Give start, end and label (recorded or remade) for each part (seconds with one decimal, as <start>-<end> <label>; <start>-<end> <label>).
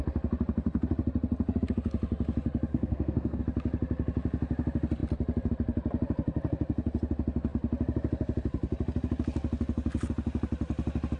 0.0-2.7 recorded; 2.7-3.4 remade; 3.4-11.2 recorded